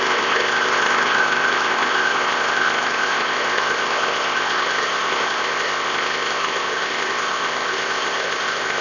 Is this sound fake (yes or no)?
yes